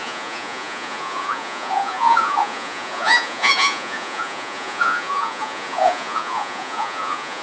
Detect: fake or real fake